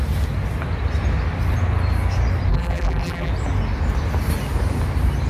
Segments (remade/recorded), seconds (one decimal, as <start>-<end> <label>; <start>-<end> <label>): 0.0-2.5 recorded; 2.5-3.3 remade; 3.3-5.3 recorded